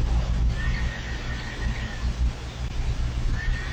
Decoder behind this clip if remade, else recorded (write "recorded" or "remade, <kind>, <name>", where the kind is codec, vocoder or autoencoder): recorded